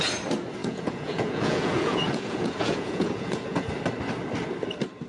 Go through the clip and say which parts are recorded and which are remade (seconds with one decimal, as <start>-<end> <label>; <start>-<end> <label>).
0.0-0.6 recorded; 0.6-3.7 remade; 3.7-5.1 recorded